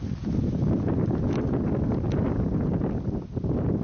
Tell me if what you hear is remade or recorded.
recorded